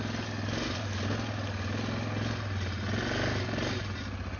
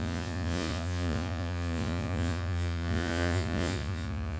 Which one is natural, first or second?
first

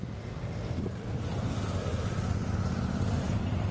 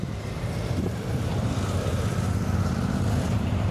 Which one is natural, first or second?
first